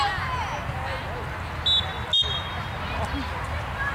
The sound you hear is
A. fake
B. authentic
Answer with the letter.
B